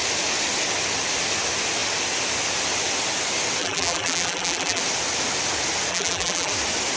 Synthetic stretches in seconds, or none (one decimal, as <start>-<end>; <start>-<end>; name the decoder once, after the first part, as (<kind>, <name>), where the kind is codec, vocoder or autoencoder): 3.6-4.8 (vocoder, BigVGAN v2); 5.9-6.5